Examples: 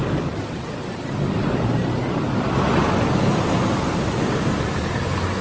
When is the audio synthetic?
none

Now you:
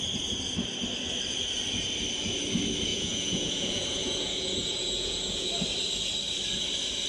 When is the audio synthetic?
2.9-5.5 (vocoder, Vocos)

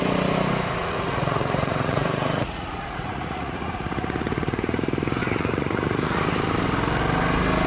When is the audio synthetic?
0.8-4.8 (vocoder, Vocos); 5.2-6.2

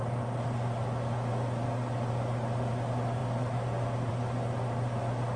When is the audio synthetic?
none